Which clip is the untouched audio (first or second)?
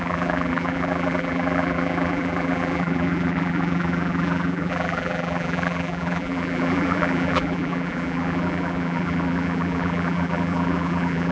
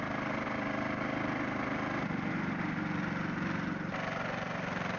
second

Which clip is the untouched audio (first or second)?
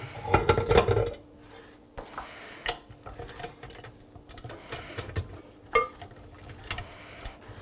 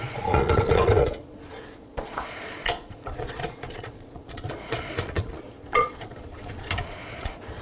first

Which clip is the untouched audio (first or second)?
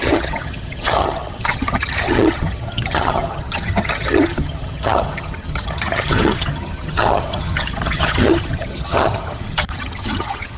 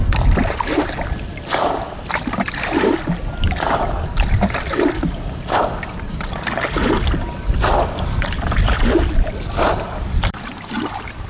second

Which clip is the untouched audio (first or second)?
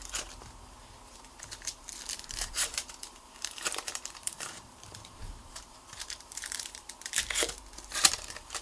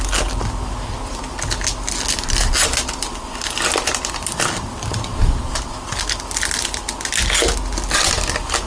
second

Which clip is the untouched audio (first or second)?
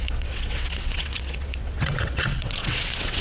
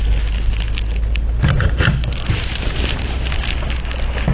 second